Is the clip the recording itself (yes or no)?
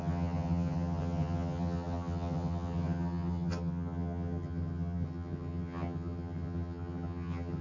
no